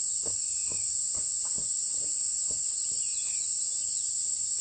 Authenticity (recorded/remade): recorded